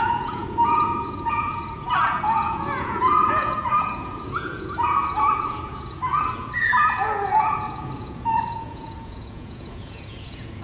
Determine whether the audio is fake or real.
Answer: fake